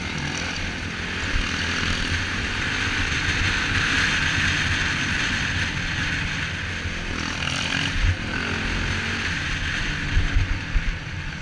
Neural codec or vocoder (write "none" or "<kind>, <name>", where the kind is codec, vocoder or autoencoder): none